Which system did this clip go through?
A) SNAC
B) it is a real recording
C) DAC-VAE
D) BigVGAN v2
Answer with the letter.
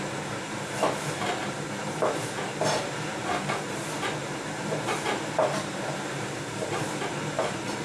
D